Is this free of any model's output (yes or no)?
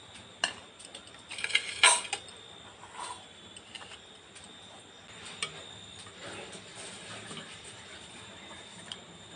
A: yes